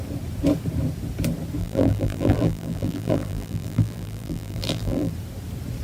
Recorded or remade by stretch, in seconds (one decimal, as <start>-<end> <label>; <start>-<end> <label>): 0.0-1.6 recorded; 1.6-5.1 remade; 5.1-5.8 recorded

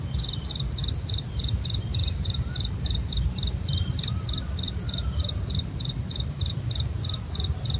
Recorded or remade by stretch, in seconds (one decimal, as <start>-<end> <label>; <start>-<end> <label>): 0.0-0.8 recorded; 0.8-1.5 remade; 1.5-2.0 recorded; 2.0-3.1 remade; 3.1-5.0 recorded; 5.0-6.5 remade; 6.5-7.8 recorded

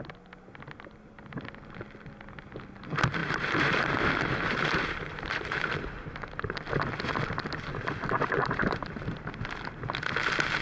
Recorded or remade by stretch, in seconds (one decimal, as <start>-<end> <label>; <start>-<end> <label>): 0.0-3.2 recorded; 3.2-5.9 remade; 5.9-7.7 recorded; 7.7-9.0 remade; 9.0-10.6 recorded